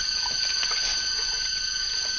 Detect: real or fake real